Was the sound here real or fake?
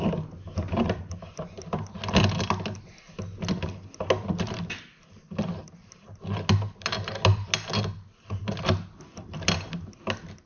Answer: real